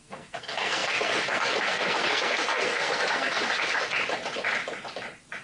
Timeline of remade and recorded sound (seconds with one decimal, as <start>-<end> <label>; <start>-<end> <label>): 0.0-3.4 remade; 3.4-5.4 recorded